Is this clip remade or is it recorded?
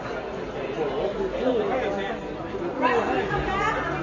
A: recorded